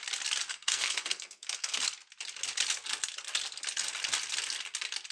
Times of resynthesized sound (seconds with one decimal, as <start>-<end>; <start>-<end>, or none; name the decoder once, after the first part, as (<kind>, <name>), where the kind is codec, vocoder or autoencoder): 0.5-1.8 (codec, SNAC)